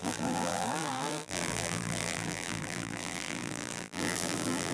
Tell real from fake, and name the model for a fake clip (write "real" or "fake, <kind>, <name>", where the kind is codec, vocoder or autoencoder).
fake, vocoder, BigVGAN v2